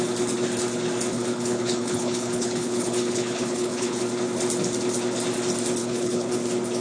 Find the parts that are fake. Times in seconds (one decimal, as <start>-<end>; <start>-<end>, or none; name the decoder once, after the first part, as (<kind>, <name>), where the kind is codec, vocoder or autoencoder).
1.1-4.0 (codec, HILCodec); 5.8-6.3